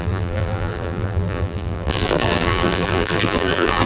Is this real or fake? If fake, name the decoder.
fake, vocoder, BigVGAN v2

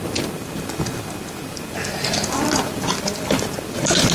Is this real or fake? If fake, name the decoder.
real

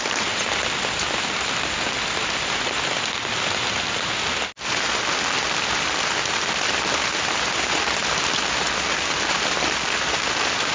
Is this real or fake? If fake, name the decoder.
real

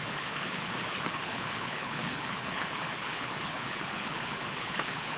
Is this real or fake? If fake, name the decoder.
fake, codec, HILCodec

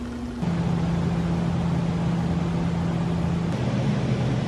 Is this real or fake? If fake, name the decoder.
real